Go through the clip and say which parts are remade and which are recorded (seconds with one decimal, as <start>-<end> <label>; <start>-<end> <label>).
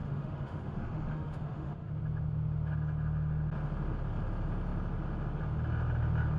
0.0-1.9 remade; 1.9-6.4 recorded